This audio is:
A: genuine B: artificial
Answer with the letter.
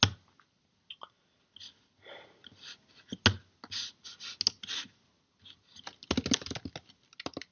A